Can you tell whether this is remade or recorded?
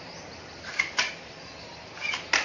recorded